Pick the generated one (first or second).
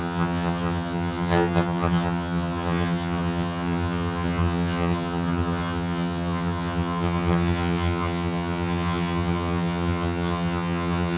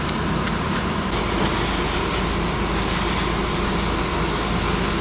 first